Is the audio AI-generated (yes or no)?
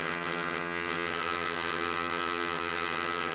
yes